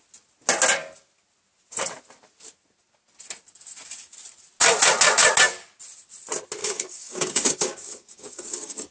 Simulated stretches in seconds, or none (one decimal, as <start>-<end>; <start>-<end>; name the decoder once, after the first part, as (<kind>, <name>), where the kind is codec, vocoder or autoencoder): 6.6-8.9 (codec, DAC)